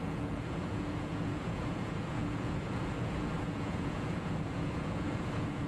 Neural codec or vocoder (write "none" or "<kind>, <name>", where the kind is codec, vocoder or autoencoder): vocoder, Vocos